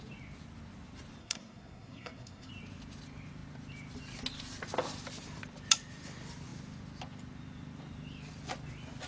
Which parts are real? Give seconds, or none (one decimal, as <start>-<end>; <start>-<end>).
0.0-1.2; 2.5-9.1

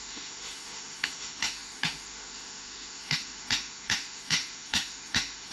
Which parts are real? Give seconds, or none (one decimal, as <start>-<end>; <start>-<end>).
none

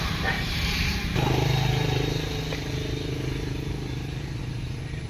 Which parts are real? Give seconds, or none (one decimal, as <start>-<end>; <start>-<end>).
1.0-3.9

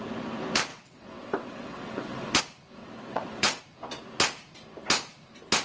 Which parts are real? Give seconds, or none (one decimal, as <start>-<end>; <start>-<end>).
0.0-0.7; 2.4-2.8; 3.6-5.6

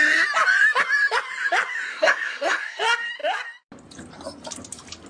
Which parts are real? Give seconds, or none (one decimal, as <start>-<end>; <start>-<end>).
0.0-1.9; 2.8-5.1

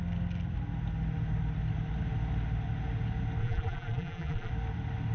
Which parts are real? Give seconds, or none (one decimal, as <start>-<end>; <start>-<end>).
0.0-3.4; 4.5-5.1

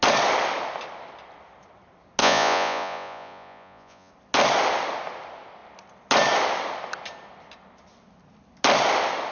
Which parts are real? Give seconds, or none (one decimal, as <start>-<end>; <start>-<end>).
0.0-2.2; 4.1-9.3